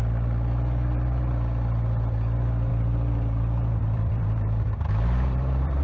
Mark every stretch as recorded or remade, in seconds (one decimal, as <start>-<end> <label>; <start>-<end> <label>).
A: 0.0-2.7 recorded; 2.7-5.8 remade